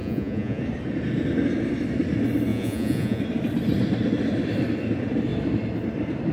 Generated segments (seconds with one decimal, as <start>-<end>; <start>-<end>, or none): 0.0-0.6; 2.5-3.2